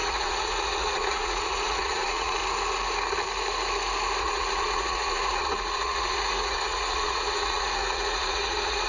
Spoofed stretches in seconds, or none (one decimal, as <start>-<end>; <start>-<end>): 0.0-2.4; 4.2-8.9